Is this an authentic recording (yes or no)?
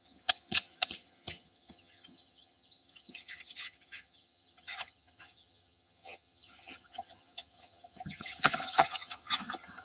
no